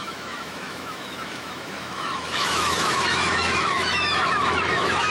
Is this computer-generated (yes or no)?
yes